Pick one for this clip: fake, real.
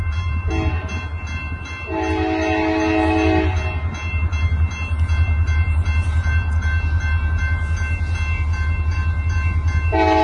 real